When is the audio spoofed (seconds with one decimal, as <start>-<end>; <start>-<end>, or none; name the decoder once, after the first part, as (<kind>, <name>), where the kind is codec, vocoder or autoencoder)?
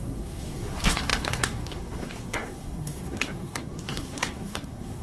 0.0-5.0 (codec, SNAC)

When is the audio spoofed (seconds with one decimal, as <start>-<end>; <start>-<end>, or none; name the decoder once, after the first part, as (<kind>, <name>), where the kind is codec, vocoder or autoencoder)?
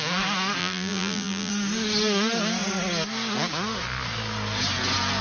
0.6-1.5 (vocoder, BigVGAN v2)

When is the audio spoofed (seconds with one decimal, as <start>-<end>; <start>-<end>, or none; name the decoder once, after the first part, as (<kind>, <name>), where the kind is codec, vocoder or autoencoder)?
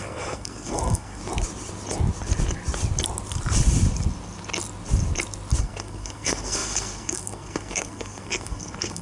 0.0-1.2 (codec, SNAC); 5.6-9.0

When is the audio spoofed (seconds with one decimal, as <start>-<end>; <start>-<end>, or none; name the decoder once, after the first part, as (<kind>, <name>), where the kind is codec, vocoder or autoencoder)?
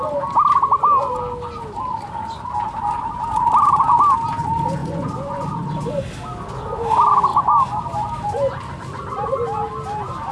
4.8-5.4 (vocoder, Vocos)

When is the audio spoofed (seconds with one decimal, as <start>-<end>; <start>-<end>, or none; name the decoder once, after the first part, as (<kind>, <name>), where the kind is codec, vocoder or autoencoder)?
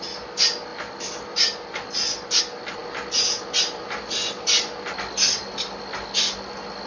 none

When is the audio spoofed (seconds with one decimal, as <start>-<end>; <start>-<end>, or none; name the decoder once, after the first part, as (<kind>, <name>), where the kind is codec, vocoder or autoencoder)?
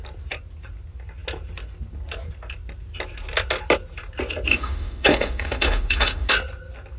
4.5-6.3 (autoencoder, DAC-VAE)